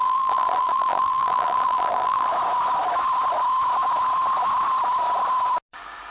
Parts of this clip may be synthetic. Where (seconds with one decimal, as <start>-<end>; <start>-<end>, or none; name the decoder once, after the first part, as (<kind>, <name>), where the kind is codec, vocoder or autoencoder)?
0.0-2.3 (vocoder, BigVGAN v2)